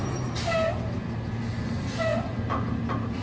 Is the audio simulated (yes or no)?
no